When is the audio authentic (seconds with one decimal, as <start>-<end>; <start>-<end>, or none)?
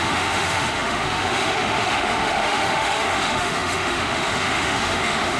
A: none